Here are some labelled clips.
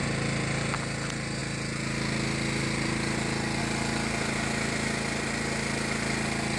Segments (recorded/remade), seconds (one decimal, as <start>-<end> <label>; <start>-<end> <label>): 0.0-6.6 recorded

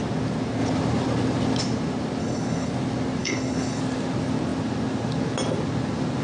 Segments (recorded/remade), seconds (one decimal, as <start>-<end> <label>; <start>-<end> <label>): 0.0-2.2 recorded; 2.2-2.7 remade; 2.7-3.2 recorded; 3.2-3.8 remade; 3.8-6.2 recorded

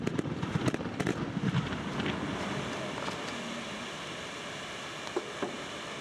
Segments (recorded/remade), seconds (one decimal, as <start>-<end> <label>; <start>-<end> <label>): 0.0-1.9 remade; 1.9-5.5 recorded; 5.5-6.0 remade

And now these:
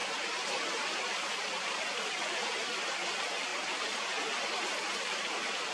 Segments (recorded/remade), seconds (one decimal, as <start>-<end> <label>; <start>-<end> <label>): 0.0-5.7 recorded

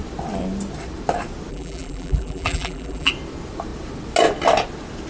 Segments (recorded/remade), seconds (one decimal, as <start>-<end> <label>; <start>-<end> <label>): 0.0-1.5 recorded; 1.5-3.1 remade; 3.1-5.1 recorded

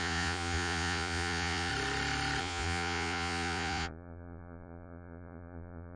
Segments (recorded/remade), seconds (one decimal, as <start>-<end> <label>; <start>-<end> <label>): 0.0-1.7 remade; 1.7-2.4 recorded; 2.4-6.0 remade

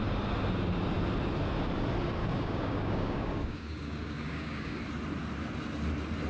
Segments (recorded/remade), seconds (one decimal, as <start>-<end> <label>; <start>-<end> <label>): 0.0-2.2 recorded; 2.2-4.8 remade; 4.8-6.3 recorded

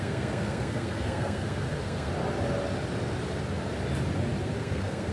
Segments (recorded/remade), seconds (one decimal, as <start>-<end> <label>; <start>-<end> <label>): 0.0-2.1 remade; 2.1-4.4 recorded; 4.4-5.1 remade